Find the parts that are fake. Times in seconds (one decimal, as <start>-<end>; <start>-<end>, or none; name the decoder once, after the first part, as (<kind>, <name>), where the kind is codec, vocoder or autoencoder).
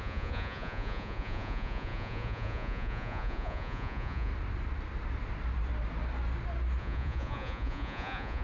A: 0.0-4.3 (vocoder, Vocos); 6.8-8.4